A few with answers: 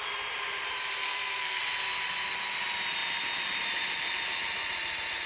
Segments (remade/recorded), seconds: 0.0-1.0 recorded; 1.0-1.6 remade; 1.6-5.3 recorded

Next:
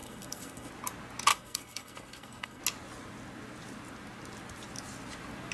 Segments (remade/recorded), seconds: 0.0-0.7 remade; 0.7-1.3 recorded; 1.3-2.6 remade; 2.6-5.5 recorded

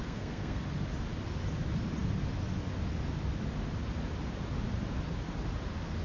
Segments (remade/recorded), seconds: 0.0-0.6 remade; 0.6-6.0 recorded

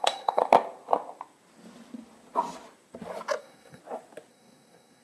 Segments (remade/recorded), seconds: 0.0-0.4 remade; 0.4-3.4 recorded; 3.4-3.8 remade; 3.8-4.3 recorded; 4.3-5.0 remade